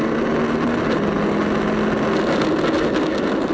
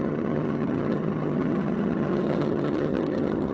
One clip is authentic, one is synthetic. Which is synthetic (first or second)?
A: second